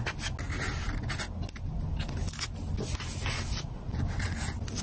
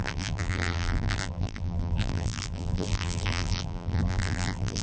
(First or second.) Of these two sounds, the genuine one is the first